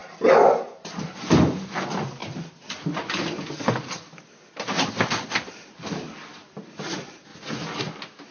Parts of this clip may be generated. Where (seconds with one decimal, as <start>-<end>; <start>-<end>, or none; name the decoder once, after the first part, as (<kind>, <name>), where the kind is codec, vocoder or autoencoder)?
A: none